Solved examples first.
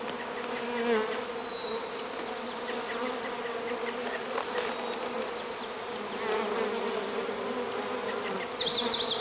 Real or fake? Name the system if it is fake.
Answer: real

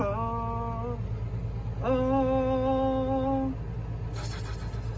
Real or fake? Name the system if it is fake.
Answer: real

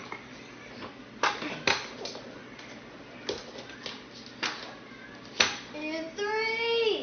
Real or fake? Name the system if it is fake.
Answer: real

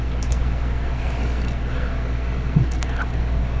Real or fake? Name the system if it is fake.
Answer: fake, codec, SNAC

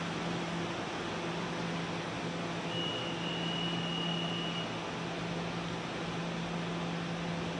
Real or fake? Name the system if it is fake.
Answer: real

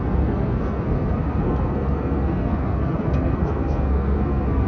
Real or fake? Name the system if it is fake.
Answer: fake, codec, SNAC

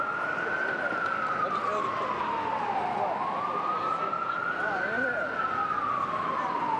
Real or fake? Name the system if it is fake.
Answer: real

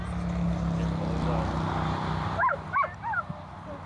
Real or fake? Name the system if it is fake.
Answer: real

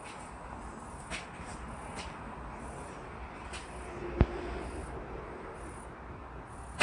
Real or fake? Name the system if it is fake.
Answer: real